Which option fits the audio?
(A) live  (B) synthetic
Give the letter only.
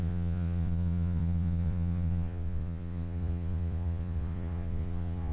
B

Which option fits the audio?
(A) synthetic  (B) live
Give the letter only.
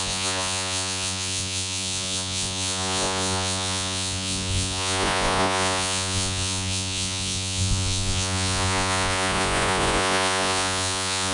A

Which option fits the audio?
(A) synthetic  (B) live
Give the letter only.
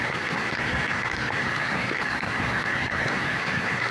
A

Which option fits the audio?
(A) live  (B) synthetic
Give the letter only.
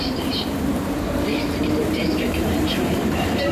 B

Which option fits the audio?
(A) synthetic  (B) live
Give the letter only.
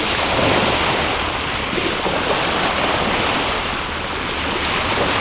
B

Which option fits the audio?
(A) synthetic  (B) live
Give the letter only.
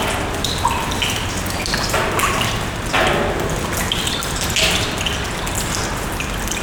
B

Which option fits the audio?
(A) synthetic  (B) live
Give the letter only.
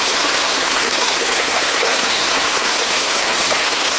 A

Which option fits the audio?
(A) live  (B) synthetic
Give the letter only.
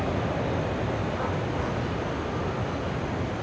A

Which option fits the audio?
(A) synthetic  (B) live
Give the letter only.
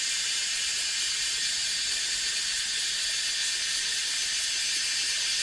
B